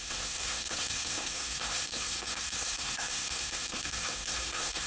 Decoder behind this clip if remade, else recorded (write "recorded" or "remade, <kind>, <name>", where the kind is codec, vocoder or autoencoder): remade, codec, SNAC